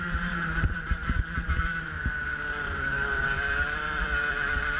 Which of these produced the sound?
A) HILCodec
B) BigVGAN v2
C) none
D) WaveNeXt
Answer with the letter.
B